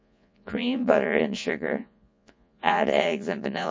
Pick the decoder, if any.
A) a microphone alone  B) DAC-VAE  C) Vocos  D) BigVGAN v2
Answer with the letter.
C